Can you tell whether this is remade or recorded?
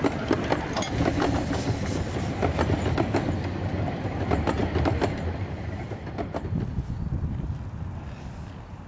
recorded